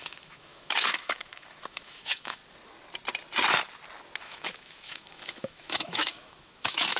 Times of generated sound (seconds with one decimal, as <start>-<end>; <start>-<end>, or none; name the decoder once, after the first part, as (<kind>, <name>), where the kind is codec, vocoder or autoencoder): 0.0-2.4 (autoencoder, DAC-VAE); 4.2-7.0